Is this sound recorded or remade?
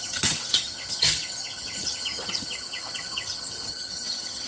remade